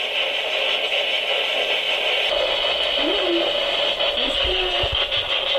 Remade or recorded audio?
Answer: recorded